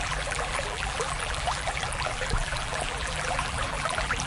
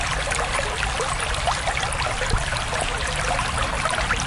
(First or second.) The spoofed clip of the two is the first